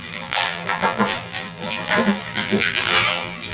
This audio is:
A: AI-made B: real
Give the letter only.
A